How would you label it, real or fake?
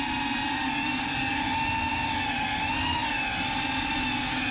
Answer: real